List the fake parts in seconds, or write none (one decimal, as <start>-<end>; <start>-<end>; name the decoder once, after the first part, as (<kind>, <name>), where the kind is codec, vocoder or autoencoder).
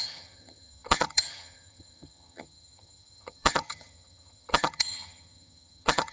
0.0-6.1 (vocoder, HiFi-GAN)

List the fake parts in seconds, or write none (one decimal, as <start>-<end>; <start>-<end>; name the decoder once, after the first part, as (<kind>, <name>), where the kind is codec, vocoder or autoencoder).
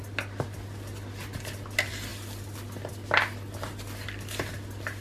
none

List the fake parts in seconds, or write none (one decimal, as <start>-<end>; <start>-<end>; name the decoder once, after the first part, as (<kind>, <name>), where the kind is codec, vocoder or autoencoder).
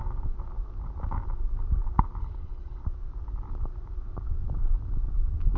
2.2-2.8 (codec, HILCodec)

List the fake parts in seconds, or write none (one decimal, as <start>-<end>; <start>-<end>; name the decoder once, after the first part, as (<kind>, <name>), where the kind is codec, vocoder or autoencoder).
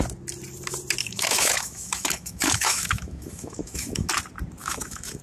1.0-4.1 (autoencoder, DAC-VAE); 4.6-5.2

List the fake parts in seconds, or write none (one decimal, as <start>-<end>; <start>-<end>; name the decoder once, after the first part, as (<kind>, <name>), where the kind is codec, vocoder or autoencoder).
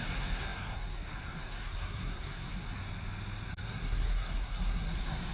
0.0-2.8 (codec, SNAC); 3.5-5.3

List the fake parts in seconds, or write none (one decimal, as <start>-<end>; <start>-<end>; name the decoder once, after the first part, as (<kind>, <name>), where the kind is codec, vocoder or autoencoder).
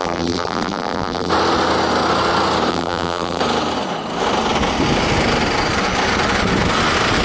0.0-1.3 (vocoder, BigVGAN v2); 2.7-3.4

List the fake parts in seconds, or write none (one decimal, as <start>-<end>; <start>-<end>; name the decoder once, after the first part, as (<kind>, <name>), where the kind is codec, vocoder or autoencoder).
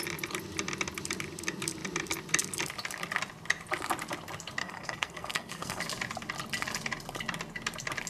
4.6-5.8 (codec, SNAC)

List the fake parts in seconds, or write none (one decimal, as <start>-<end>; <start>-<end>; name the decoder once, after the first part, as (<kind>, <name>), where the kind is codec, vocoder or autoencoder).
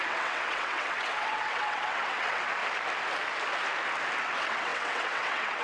0.0-2.6 (vocoder, WaveNeXt); 4.2-5.6